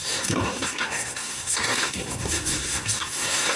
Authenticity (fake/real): fake